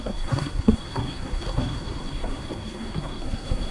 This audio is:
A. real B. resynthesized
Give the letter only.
B